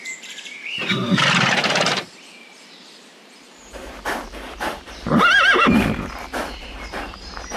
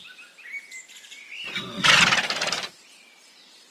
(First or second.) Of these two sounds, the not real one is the first